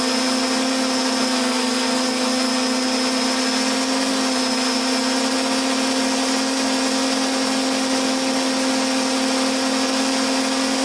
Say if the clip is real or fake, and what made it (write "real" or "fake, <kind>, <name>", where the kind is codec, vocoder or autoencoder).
real